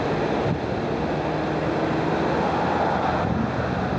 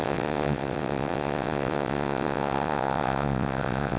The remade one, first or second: second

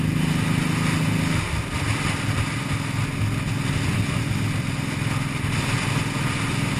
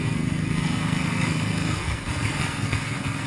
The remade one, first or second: second